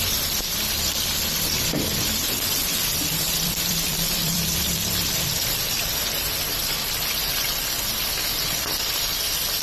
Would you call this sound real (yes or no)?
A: no